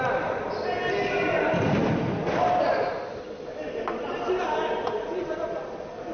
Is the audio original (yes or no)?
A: yes